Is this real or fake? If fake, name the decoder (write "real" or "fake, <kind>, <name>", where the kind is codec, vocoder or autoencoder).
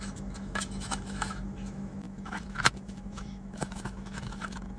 fake, autoencoder, DAC-VAE